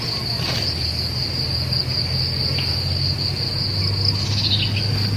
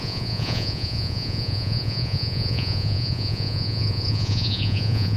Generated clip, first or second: second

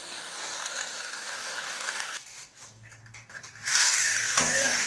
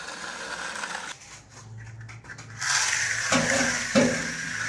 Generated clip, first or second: first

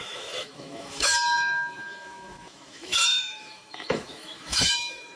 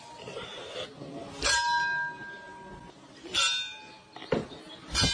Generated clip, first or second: first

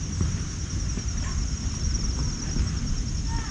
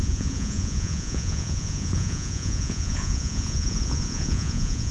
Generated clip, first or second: second